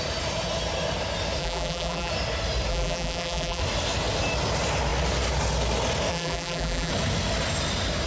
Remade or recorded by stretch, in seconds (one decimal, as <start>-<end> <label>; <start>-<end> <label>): 0.0-1.4 recorded; 1.4-2.1 remade; 2.1-2.7 recorded; 2.7-3.6 remade; 3.6-6.1 recorded; 6.1-6.9 remade; 6.9-8.1 recorded

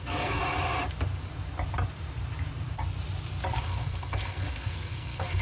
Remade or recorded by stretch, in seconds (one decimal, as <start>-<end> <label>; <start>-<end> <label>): 0.0-0.4 remade; 0.4-3.6 recorded; 3.6-5.4 remade

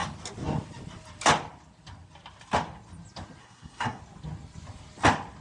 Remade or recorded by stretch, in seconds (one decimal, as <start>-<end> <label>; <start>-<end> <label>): 0.0-3.4 recorded; 3.4-4.0 remade; 4.0-5.4 recorded

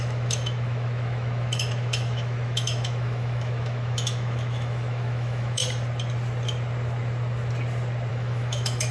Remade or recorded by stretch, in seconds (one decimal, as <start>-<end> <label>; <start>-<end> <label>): 0.0-5.6 remade; 5.6-8.1 recorded; 8.1-8.9 remade